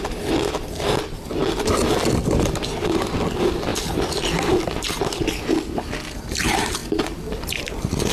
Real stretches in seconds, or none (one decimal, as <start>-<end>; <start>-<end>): 0.0-8.1